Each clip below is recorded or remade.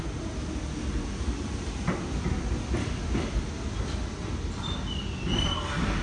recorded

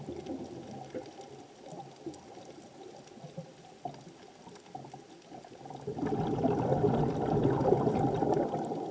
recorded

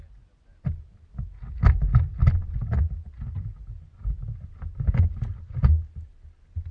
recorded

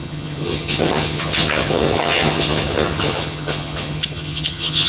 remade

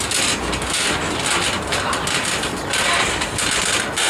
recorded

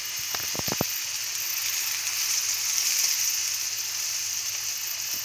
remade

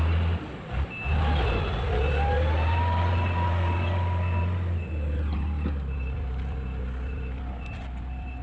recorded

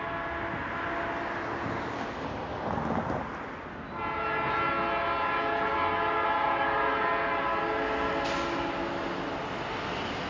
recorded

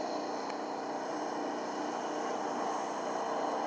recorded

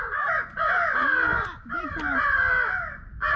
recorded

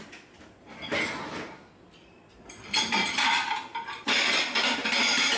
recorded